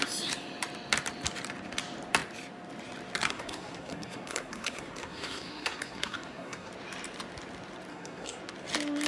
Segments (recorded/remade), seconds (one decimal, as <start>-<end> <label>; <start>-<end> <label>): 0.0-3.2 recorded; 3.2-6.7 remade; 6.7-7.9 recorded; 7.9-8.4 remade; 8.4-9.1 recorded